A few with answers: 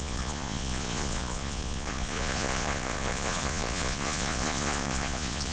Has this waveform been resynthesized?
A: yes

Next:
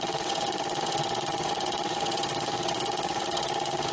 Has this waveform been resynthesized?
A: yes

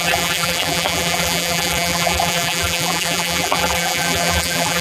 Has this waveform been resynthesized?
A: yes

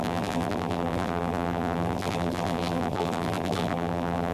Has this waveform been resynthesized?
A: yes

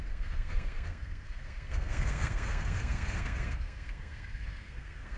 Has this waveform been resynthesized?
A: yes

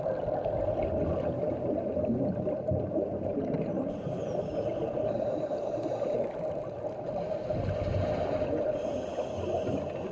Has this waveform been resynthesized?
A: no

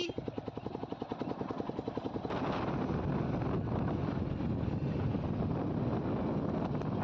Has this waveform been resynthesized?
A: no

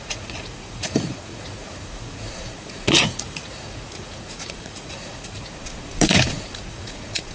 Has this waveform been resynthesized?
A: yes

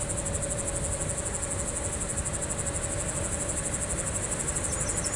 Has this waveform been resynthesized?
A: no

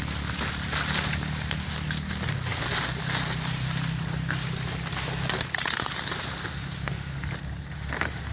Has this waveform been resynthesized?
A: no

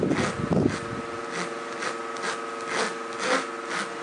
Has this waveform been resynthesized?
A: no